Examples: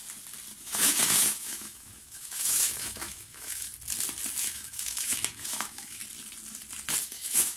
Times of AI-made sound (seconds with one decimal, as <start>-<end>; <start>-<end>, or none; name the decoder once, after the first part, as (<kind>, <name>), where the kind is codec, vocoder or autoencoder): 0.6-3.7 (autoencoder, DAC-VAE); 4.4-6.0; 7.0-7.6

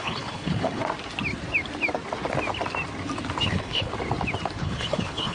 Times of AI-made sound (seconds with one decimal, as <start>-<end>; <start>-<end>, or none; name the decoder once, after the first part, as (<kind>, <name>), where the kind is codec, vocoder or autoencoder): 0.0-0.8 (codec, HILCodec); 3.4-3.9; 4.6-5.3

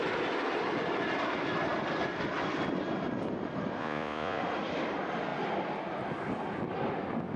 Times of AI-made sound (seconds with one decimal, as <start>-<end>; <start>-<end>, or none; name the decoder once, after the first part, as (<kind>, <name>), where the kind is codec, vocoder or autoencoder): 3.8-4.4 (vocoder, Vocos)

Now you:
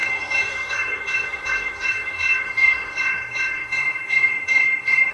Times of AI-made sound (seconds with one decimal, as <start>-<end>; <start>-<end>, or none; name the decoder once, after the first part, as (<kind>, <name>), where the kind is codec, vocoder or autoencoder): 0.0-5.1 (codec, SNAC)

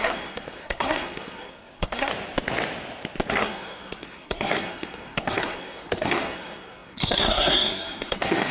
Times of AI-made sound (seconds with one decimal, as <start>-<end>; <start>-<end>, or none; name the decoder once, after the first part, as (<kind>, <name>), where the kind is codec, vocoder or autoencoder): 0.0-2.1 (codec, SNAC); 3.3-8.5

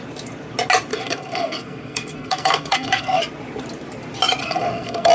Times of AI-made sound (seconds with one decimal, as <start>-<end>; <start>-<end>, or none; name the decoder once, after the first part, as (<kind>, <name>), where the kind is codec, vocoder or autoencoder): 0.9-3.2 (codec, SNAC); 4.4-5.1

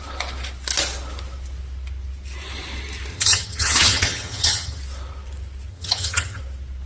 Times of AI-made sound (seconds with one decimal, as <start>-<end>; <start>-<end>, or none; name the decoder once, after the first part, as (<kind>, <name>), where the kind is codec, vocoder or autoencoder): 3.1-4.8 (vocoder, HiFi-GAN); 5.7-6.4